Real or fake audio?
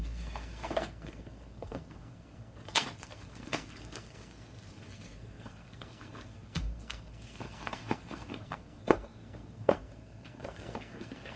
fake